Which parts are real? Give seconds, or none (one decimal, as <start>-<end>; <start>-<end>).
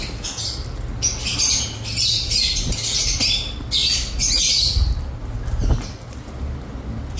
0.0-7.2